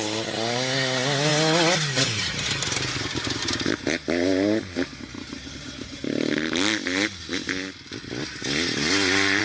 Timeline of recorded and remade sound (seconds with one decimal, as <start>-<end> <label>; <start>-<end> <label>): 0.0-1.3 remade; 1.3-2.0 recorded; 2.0-6.0 remade; 6.0-9.4 recorded